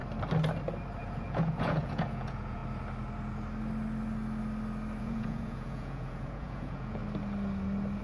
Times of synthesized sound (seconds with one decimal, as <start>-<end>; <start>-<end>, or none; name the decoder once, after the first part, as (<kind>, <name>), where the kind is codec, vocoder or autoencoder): 1.0-2.6 (vocoder, Vocos); 5.0-7.0